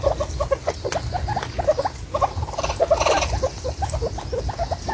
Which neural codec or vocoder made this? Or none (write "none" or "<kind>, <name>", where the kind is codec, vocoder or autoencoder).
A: none